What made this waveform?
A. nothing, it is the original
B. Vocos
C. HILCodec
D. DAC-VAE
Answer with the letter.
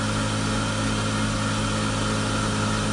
A